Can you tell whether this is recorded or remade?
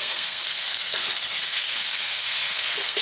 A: remade